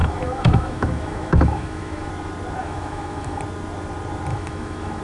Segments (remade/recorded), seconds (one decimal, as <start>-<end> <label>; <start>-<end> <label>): 0.0-2.1 remade; 2.1-2.6 recorded; 2.6-3.4 remade; 3.4-4.3 recorded; 4.3-5.0 remade